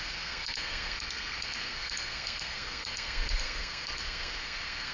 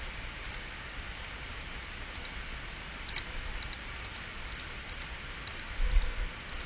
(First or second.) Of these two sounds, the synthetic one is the first